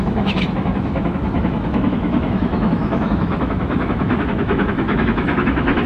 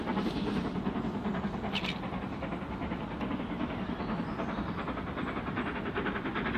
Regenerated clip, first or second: first